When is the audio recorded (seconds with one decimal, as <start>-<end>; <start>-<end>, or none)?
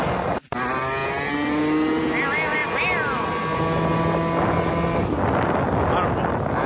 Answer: 0.0-6.7